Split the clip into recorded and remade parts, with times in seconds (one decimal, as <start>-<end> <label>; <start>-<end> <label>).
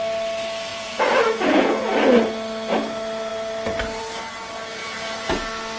0.0-0.7 recorded; 0.7-1.9 remade; 1.9-4.7 recorded; 4.7-5.3 remade; 5.3-5.8 recorded